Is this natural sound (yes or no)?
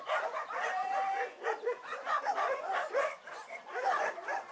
no